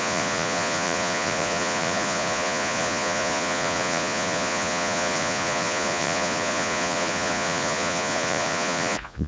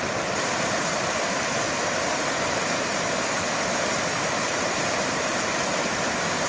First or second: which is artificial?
first